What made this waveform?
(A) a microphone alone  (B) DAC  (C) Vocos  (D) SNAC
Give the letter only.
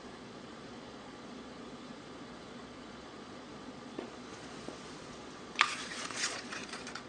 C